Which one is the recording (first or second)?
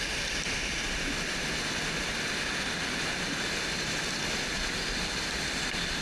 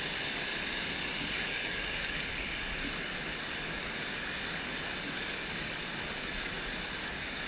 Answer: first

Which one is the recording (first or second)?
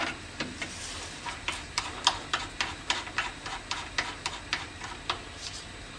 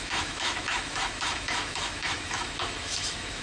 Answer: first